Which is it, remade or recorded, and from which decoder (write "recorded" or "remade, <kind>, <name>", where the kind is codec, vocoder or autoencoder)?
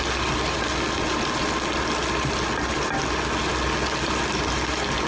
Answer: recorded